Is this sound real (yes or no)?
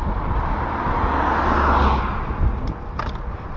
yes